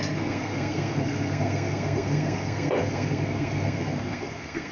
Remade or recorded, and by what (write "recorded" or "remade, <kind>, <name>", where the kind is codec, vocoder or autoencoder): remade, codec, SNAC